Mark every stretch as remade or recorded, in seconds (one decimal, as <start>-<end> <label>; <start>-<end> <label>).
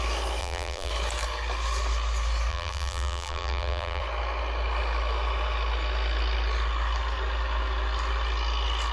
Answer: 0.0-0.4 recorded; 0.4-0.9 remade; 0.9-2.5 recorded; 2.5-4.0 remade; 4.0-8.9 recorded